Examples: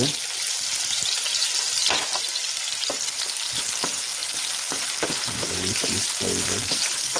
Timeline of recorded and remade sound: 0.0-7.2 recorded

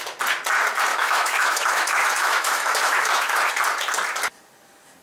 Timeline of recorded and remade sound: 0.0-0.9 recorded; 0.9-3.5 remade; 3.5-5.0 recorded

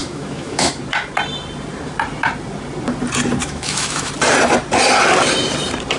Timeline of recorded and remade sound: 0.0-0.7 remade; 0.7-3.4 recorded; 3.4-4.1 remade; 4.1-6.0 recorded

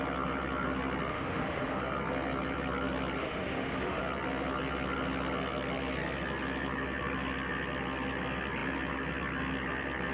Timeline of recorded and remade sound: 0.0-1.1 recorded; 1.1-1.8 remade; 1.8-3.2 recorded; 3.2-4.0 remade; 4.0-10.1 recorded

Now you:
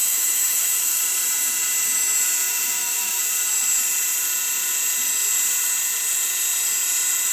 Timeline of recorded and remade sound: 0.0-1.0 remade; 1.0-2.5 recorded; 2.5-3.2 remade; 3.2-7.3 recorded

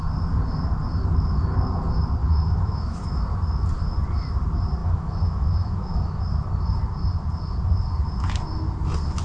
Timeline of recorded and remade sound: 0.0-2.2 recorded; 2.2-3.2 remade; 3.2-4.8 recorded; 4.8-6.2 remade; 6.2-9.2 recorded

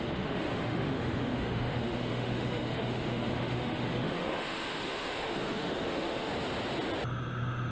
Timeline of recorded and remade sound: 0.0-6.3 remade; 6.3-7.7 recorded